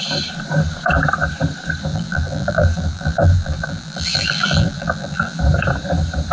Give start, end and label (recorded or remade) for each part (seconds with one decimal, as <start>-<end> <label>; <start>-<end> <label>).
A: 0.0-1.9 recorded; 1.9-5.4 remade; 5.4-6.3 recorded